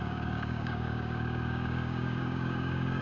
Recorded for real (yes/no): no